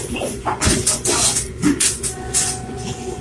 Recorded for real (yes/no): no